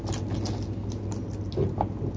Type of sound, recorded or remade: recorded